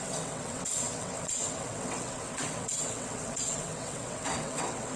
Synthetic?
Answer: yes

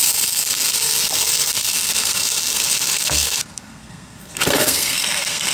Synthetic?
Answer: yes